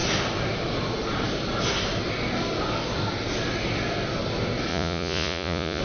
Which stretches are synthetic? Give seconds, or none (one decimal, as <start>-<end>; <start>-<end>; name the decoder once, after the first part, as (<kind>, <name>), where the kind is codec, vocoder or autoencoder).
4.7-5.8 (vocoder, Vocos)